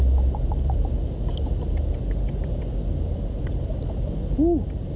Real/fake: real